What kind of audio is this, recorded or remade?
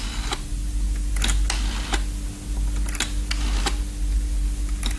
recorded